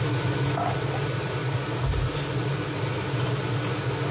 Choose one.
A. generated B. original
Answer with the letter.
B